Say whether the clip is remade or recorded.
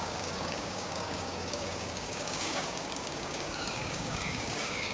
remade